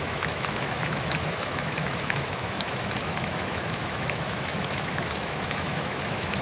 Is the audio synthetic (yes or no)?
yes